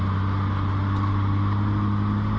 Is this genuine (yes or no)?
yes